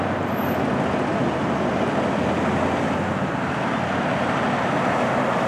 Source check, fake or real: real